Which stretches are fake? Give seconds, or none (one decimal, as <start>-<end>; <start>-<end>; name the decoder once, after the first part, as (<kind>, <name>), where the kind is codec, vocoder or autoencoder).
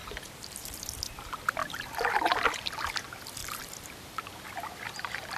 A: 0.0-0.9 (vocoder, BigVGAN v2); 3.4-4.2